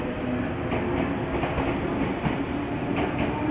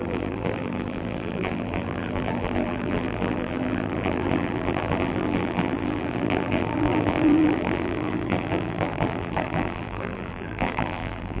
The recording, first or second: first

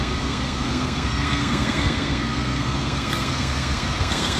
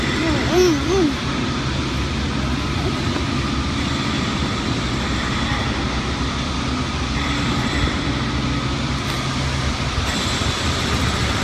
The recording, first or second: second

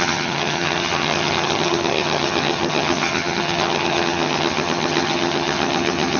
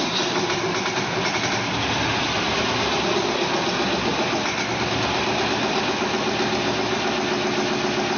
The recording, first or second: second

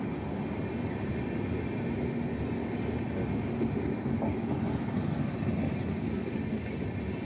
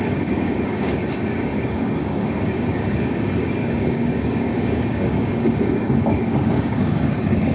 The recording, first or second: first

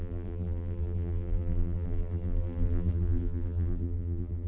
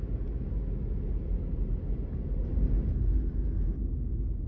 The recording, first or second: second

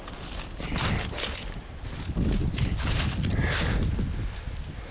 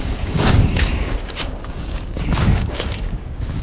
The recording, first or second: first